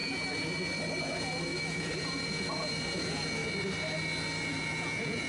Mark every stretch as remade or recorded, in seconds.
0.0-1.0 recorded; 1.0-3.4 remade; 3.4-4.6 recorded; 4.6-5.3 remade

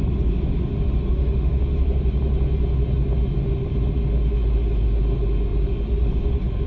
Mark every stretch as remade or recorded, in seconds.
0.0-1.1 recorded; 1.1-1.6 remade; 1.6-6.7 recorded

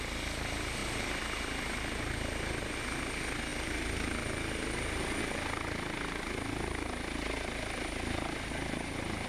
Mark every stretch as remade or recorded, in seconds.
0.0-9.3 recorded

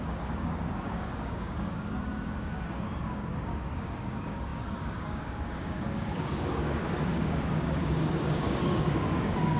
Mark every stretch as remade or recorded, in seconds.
0.0-9.6 remade

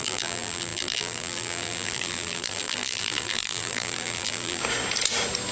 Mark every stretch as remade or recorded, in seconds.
0.0-4.6 remade; 4.6-5.5 recorded